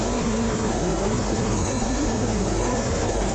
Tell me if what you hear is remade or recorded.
remade